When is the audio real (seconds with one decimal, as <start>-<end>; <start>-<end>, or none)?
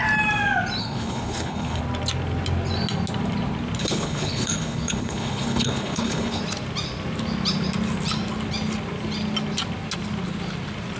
0.0-0.8; 1.8-3.8; 6.4-11.0